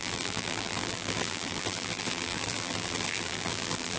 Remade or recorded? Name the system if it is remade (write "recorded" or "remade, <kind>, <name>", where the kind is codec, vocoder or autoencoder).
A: remade, vocoder, BigVGAN v2